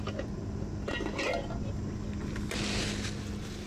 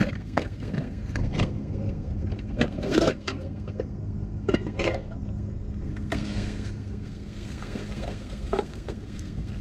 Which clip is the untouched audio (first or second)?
first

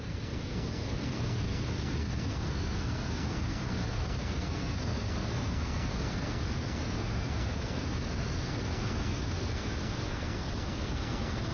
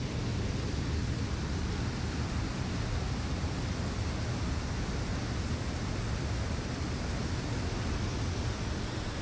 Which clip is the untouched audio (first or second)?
second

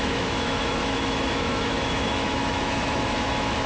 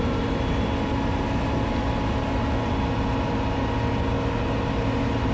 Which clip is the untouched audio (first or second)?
second